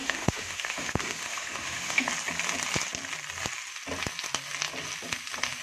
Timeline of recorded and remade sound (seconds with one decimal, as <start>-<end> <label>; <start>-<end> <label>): 0.0-2.1 remade; 2.1-5.6 recorded

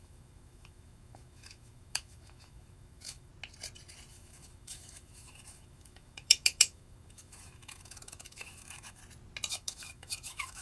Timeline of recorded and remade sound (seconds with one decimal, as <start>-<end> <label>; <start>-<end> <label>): 0.0-3.3 remade; 3.3-4.1 recorded; 4.1-9.0 remade; 9.0-9.5 recorded; 9.5-10.6 remade

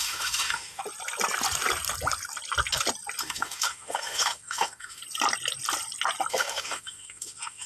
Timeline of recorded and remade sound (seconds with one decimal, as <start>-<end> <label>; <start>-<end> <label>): 0.0-0.8 remade; 0.8-3.2 recorded; 3.2-5.0 remade; 5.0-6.3 recorded; 6.3-7.7 remade

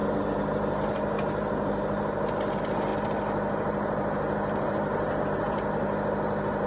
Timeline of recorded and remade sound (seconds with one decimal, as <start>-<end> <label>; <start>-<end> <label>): 0.0-6.7 recorded

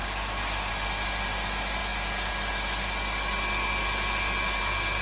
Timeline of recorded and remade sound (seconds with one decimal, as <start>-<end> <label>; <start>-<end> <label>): 0.0-0.7 remade; 0.7-5.0 recorded